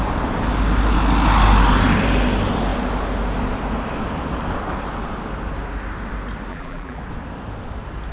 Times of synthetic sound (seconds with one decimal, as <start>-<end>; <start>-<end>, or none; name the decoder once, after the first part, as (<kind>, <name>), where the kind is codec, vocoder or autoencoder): 6.5-7.0 (vocoder, BigVGAN v2)